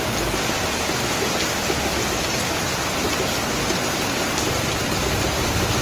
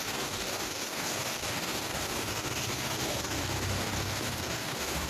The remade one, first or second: second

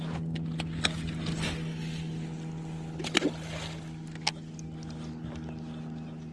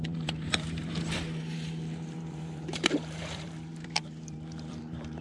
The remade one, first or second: second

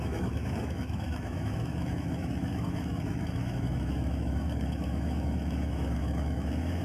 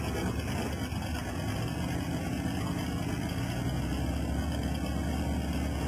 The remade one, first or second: first